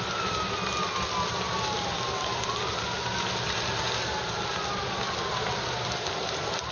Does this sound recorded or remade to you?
recorded